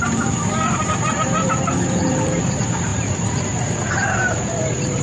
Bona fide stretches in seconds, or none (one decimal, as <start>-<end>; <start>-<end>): none